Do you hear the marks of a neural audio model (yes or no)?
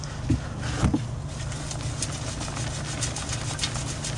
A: no